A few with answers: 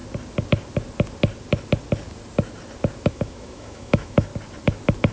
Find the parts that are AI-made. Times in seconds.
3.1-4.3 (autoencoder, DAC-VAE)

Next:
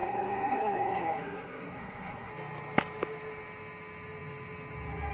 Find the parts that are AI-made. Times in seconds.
0.0-2.3 (codec, SNAC)

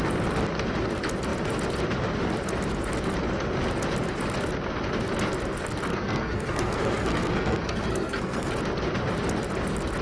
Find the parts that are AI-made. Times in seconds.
5.9-8.5 (codec, SNAC)

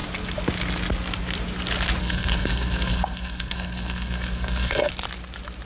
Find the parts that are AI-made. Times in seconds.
2.0-4.9 (codec, SNAC)